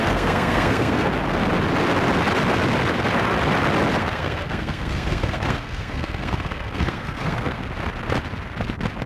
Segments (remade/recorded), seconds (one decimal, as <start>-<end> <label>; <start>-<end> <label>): 0.0-1.1 remade; 1.1-4.0 recorded; 4.0-7.6 remade; 7.6-9.1 recorded